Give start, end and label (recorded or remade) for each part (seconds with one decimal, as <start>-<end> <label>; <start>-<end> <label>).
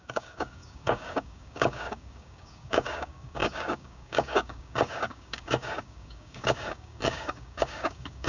0.0-8.3 remade